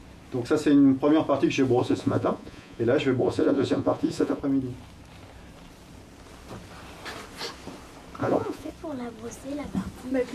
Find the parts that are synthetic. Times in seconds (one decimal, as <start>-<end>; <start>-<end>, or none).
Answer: 1.8-2.8; 3.2-4.4; 8.2-8.7